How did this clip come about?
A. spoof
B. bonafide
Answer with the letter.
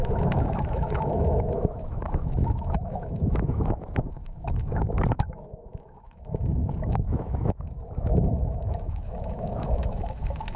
A